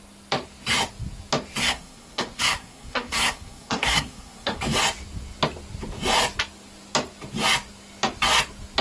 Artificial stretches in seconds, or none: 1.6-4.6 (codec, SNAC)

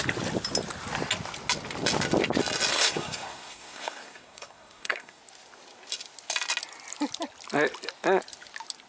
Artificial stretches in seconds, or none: 2.7-5.2 (codec, SNAC)

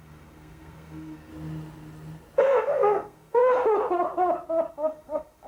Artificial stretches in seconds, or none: 0.0-1.3 (codec, SNAC); 2.4-3.4; 4.7-5.5

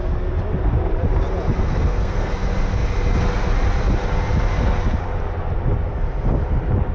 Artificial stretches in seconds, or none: 1.6-2.3 (codec, SNAC)

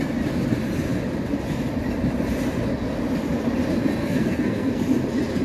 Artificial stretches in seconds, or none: 4.0-4.8 (codec, SNAC)

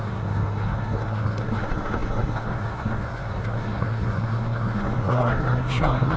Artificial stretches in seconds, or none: 0.0-6.2 (codec, SNAC)

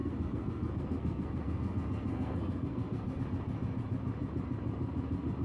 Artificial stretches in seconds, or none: 0.0-3.2 (codec, SNAC)